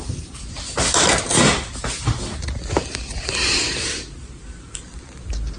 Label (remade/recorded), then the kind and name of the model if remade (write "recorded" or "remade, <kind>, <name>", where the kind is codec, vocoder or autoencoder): recorded